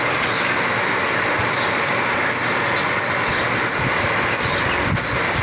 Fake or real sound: real